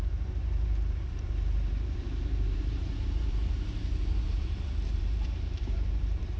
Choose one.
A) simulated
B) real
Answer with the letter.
A